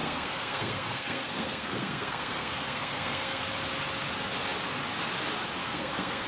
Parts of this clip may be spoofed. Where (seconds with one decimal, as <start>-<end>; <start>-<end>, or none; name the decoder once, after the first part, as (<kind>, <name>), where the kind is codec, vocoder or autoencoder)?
0.0-3.4 (codec, SNAC); 5.6-6.3